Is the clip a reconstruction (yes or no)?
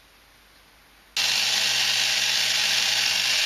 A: no